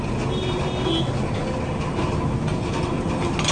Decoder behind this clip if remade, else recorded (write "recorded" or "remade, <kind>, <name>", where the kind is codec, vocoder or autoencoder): recorded